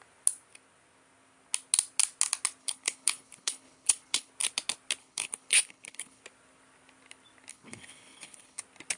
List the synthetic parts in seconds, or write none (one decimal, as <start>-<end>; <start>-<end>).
2.6-4.3; 5.0-6.2; 7.5-8.6